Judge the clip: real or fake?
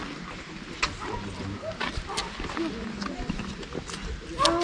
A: real